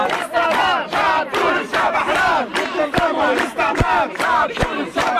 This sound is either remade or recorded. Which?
remade